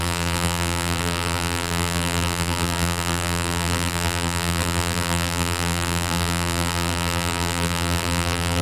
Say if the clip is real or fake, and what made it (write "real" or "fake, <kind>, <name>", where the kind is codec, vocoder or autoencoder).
fake, vocoder, BigVGAN v2